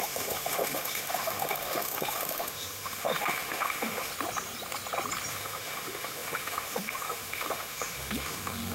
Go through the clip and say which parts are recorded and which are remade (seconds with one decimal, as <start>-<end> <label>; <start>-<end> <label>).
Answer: 0.0-4.1 remade; 4.1-5.3 recorded; 5.3-8.7 remade